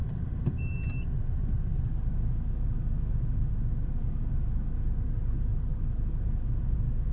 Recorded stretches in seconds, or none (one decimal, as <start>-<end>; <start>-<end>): 0.0-7.1